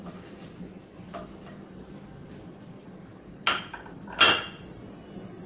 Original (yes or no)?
yes